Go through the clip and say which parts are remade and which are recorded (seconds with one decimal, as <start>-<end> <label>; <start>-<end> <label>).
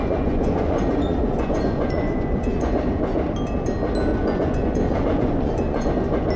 0.0-2.7 remade; 2.7-4.1 recorded; 4.1-5.9 remade; 5.9-6.4 recorded